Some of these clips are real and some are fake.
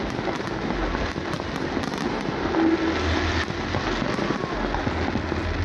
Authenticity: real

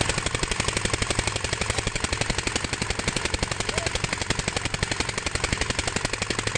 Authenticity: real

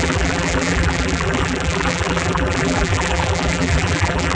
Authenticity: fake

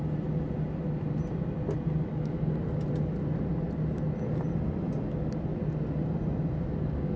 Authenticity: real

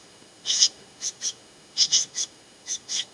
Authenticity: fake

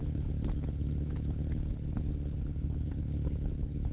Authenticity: fake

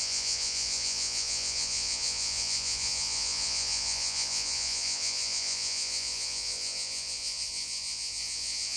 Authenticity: fake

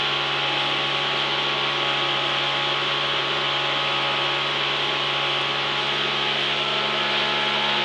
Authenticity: real